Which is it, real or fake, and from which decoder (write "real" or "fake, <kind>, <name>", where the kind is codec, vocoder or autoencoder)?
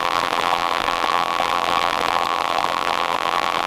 fake, vocoder, BigVGAN v2